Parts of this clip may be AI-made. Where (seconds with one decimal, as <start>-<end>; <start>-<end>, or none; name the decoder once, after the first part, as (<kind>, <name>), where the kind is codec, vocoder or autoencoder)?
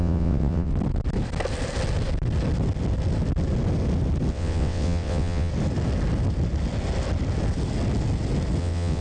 0.0-0.7 (vocoder, WaveNeXt); 4.3-5.5; 8.6-9.0